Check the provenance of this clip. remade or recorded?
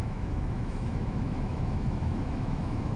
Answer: remade